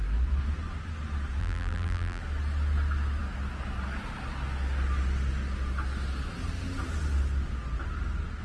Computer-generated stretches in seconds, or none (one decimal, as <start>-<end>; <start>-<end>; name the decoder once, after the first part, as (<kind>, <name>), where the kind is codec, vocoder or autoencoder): 1.4-2.2 (vocoder, BigVGAN v2)